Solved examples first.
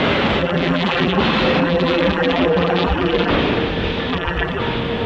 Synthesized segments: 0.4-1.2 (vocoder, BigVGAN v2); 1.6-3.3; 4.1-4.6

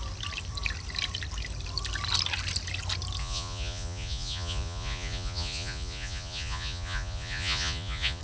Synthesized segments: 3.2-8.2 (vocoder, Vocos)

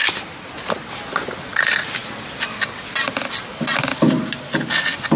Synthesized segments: none